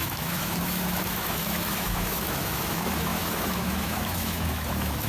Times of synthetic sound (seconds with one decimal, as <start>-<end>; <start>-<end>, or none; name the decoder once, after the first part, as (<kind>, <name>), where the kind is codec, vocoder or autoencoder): 0.0-5.1 (autoencoder, DAC-VAE)